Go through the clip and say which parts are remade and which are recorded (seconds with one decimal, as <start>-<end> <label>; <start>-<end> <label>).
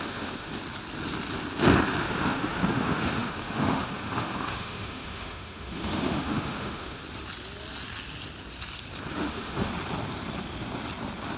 0.0-0.5 remade; 0.5-2.0 recorded; 2.0-7.0 remade; 7.0-9.1 recorded; 9.1-9.7 remade; 9.7-11.4 recorded